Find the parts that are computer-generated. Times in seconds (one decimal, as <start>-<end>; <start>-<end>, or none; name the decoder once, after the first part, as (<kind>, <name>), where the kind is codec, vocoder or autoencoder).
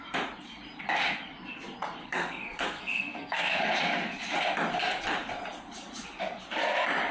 2.0-3.6 (codec, SNAC)